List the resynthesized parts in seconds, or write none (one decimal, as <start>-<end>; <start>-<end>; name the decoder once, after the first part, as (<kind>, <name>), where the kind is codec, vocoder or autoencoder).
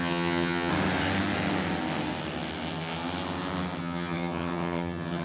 0.0-0.7 (vocoder, HiFi-GAN); 3.8-5.2